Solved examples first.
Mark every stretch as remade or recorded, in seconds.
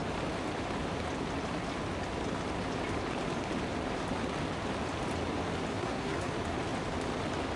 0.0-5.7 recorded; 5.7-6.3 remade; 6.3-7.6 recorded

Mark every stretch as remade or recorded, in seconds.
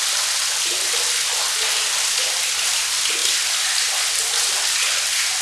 0.0-5.4 recorded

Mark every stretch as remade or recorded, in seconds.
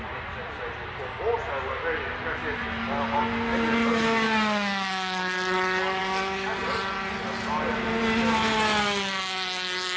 0.0-10.0 recorded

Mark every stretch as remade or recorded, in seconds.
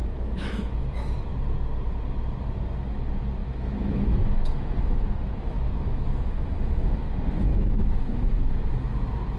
0.0-0.8 remade; 0.8-3.4 recorded; 3.4-7.0 remade; 7.0-7.5 recorded; 7.5-8.7 remade; 8.7-9.4 recorded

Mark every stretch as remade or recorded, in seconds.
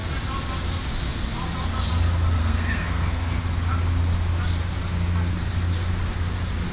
0.0-2.4 recorded; 2.4-3.4 remade; 3.4-6.7 recorded